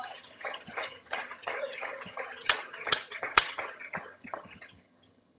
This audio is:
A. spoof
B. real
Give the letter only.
A